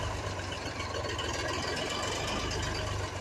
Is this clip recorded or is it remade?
recorded